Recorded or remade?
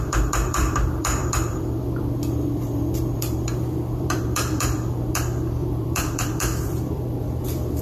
remade